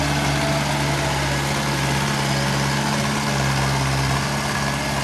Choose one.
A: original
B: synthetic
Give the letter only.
A